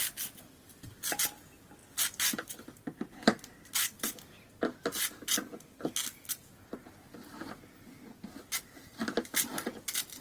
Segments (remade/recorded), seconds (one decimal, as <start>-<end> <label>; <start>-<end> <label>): 0.0-10.2 recorded